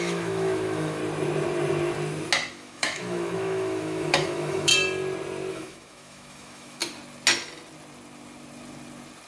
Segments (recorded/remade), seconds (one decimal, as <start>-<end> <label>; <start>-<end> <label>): 0.0-1.0 remade; 1.0-2.5 recorded; 2.5-4.7 remade; 4.7-5.5 recorded; 5.5-6.8 remade; 6.8-9.3 recorded